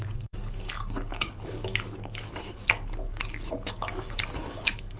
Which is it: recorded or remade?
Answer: remade